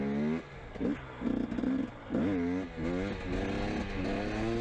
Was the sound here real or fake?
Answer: real